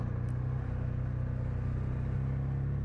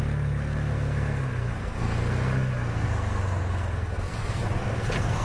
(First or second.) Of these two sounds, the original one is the first